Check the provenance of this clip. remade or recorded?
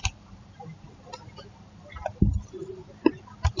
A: remade